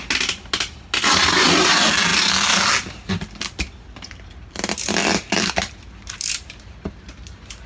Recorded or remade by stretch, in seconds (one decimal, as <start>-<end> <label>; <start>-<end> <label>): 0.0-2.1 recorded; 2.1-2.7 remade; 2.7-6.0 recorded; 6.0-7.7 remade